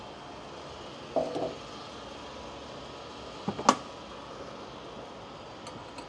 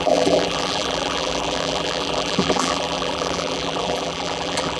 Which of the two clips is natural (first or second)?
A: first